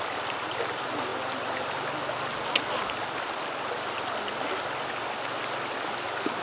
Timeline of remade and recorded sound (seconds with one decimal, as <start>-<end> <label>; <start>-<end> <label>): 0.0-6.4 recorded